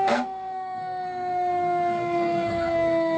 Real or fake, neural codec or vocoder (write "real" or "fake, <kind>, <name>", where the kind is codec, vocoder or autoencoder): fake, codec, SNAC